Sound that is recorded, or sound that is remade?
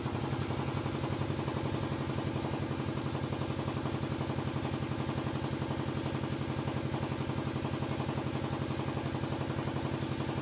recorded